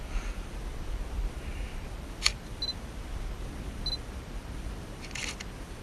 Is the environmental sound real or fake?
real